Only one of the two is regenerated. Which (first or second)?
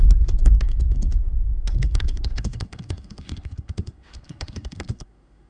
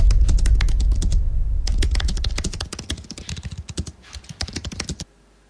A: first